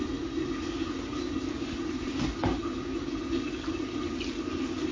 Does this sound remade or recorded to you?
recorded